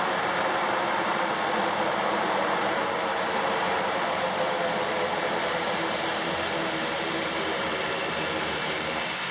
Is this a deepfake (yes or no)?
yes